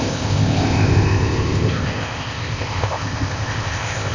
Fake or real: fake